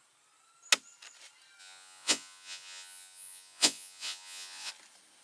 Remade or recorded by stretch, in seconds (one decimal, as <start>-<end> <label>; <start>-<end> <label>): 0.0-1.6 recorded; 1.6-4.7 remade; 4.7-5.2 recorded